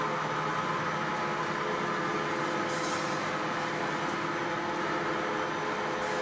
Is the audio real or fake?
real